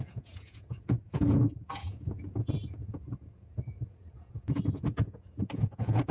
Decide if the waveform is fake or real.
fake